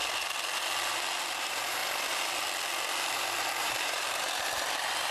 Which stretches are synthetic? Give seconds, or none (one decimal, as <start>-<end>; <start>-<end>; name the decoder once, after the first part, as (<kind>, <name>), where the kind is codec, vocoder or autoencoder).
1.4-1.8 (vocoder, BigVGAN v2); 3.6-5.1